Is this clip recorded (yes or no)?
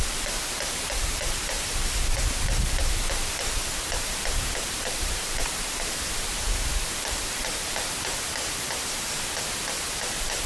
no